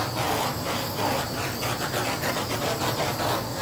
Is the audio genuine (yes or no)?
yes